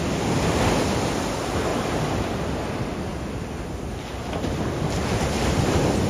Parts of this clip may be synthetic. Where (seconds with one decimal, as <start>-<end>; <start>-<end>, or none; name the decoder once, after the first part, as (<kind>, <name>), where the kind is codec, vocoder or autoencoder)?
1.7-2.3 (vocoder, BigVGAN v2)